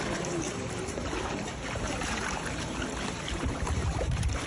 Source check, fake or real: fake